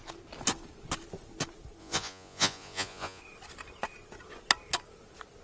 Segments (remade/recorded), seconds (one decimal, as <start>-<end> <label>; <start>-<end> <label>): 0.0-1.8 recorded; 1.8-3.2 remade; 3.2-5.4 recorded